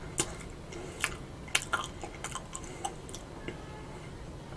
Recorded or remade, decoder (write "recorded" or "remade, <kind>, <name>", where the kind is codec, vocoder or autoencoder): recorded